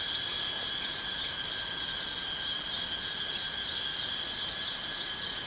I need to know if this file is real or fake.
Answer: real